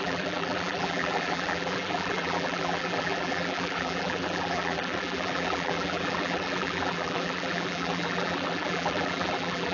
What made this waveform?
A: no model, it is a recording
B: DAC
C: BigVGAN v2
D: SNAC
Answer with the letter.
C